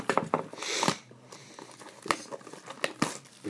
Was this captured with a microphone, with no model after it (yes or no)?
yes